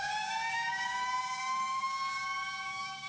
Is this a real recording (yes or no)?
no